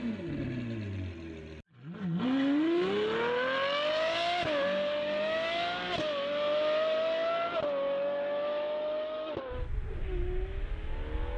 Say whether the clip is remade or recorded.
recorded